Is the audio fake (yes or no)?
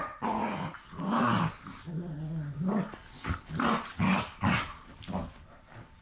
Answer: no